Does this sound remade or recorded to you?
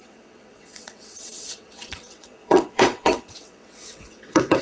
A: remade